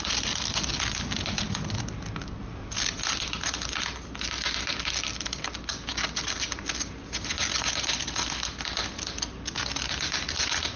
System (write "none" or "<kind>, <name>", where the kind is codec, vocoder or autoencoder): none